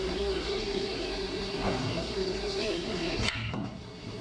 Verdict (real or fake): fake